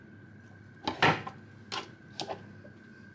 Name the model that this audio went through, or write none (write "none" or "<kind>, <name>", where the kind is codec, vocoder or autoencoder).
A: none